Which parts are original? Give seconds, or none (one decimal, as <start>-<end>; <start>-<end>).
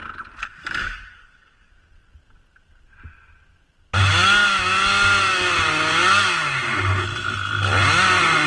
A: 0.0-0.8; 1.7-8.5